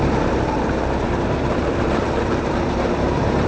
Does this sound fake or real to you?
fake